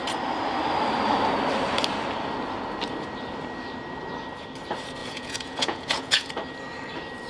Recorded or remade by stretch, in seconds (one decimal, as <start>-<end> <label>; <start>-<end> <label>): 0.0-5.0 recorded; 5.0-6.3 remade; 6.3-7.3 recorded